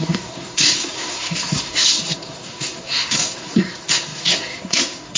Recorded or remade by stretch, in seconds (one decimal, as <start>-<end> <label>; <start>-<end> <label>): 0.0-5.2 remade